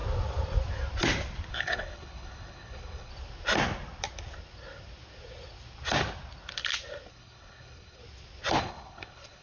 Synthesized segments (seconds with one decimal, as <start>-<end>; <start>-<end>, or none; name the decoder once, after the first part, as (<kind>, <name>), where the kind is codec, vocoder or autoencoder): 1.5-3.1 (codec, HILCodec); 7.1-8.0; 8.6-9.4